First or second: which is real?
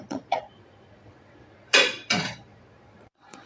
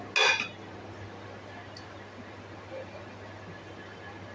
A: second